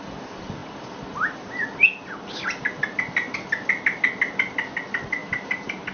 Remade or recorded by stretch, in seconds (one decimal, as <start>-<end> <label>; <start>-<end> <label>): 0.0-5.2 recorded; 5.2-5.9 remade